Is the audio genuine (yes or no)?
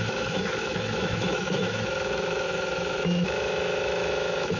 no